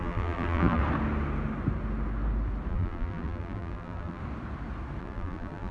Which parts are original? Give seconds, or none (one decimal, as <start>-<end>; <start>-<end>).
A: 0.8-2.7; 4.2-5.0